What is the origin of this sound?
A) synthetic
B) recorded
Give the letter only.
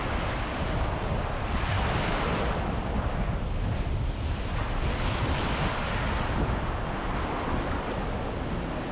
B